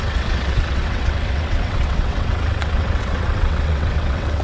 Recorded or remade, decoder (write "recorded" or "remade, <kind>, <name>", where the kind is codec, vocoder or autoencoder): remade, vocoder, WaveNeXt